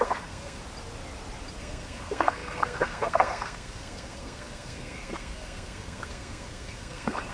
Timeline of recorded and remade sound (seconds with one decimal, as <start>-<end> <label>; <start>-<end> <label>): 0.0-0.6 remade; 0.6-1.6 recorded; 1.6-7.3 remade